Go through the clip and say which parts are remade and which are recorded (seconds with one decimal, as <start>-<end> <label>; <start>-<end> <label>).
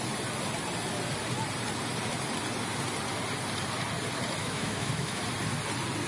0.0-4.4 recorded; 4.4-5.2 remade; 5.2-6.1 recorded